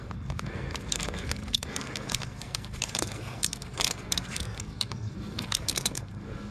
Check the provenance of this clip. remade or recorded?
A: remade